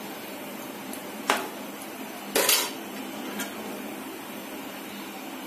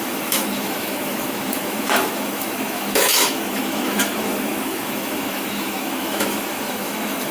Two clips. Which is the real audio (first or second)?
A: first